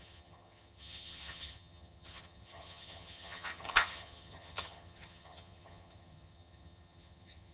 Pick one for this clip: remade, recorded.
remade